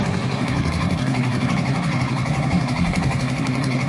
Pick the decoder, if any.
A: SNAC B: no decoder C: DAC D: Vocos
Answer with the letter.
A